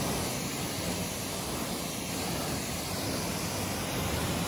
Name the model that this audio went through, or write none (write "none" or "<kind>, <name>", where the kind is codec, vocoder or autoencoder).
none